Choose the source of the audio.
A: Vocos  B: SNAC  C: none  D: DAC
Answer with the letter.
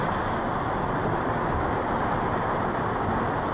C